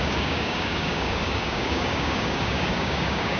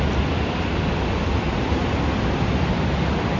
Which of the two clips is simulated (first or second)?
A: first